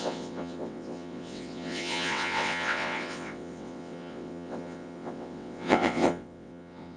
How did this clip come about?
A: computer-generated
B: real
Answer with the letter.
A